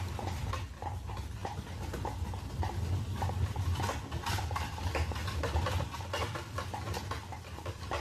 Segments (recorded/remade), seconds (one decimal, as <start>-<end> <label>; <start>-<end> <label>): 0.0-1.4 remade; 1.4-2.9 recorded; 2.9-5.2 remade; 5.2-7.6 recorded; 7.6-8.0 remade